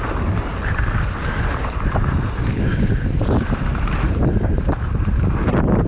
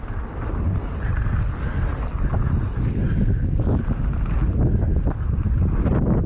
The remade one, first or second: first